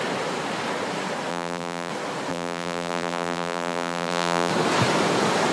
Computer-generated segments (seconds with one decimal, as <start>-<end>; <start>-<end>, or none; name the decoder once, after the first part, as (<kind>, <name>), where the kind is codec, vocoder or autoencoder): 1.3-1.9 (vocoder, BigVGAN v2); 2.3-4.5